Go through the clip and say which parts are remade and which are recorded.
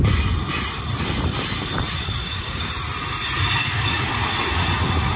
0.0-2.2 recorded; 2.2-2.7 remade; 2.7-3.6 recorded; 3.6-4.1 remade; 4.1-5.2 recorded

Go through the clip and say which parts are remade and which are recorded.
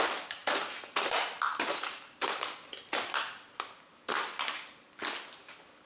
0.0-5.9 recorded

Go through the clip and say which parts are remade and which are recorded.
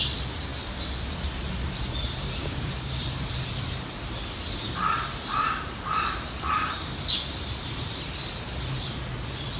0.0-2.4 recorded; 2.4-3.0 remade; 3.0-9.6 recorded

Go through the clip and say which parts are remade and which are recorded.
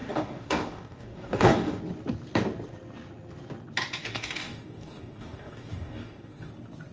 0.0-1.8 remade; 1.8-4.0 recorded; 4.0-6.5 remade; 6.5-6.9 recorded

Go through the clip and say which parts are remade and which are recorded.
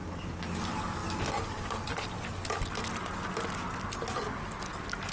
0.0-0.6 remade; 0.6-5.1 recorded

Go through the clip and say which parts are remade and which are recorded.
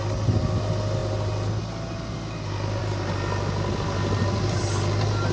0.0-5.3 recorded